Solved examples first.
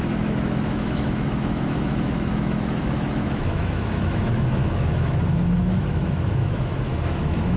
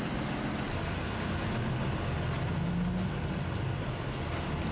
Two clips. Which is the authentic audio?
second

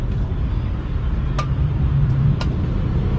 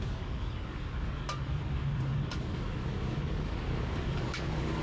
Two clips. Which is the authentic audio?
first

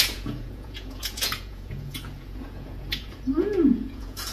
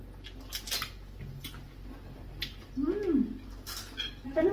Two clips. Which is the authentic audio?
second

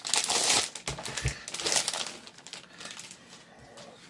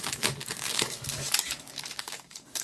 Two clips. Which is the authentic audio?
first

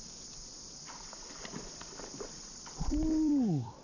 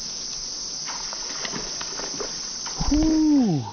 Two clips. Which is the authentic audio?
second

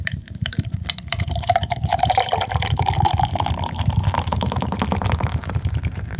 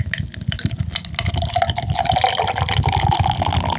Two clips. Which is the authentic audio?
second